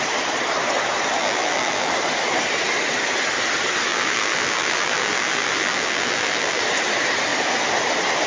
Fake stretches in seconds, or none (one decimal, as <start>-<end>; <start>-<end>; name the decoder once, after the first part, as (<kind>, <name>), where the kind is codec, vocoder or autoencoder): 1.2-1.9 (vocoder, BigVGAN v2); 3.9-6.6